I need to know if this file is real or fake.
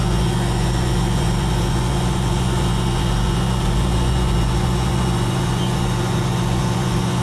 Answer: fake